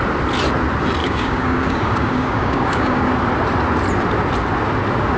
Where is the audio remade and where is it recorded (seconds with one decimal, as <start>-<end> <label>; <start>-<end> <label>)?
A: 0.0-1.0 recorded; 1.0-3.1 remade; 3.1-5.2 recorded